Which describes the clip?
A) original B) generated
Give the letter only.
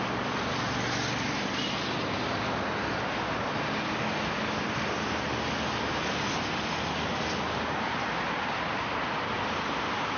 A